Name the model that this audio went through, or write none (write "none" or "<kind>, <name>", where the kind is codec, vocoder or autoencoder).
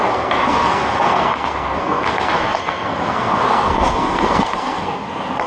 codec, SNAC